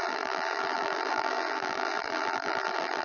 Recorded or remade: remade